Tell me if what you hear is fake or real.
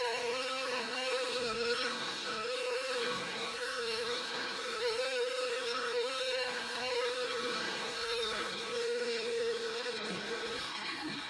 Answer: fake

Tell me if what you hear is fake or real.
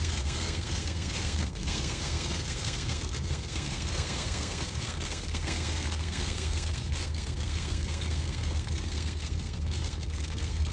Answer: fake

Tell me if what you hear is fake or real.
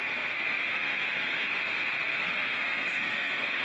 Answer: fake